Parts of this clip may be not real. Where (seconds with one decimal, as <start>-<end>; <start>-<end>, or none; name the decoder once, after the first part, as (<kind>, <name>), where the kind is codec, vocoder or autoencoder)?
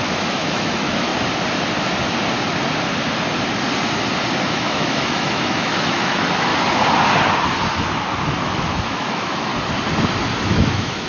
0.0-1.1 (autoencoder, DAC-VAE); 4.5-6.5; 8.5-9.5; 10.4-11.1